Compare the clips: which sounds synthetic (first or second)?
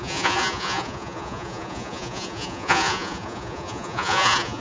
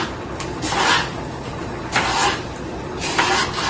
first